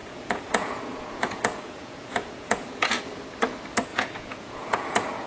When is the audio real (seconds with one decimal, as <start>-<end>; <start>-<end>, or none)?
3.0-3.9